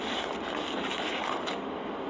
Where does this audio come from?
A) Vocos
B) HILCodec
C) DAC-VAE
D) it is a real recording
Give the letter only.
D